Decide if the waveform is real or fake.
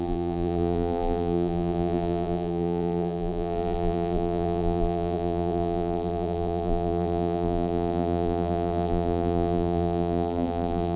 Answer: fake